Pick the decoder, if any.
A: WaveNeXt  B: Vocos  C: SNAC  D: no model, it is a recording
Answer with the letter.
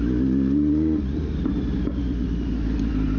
D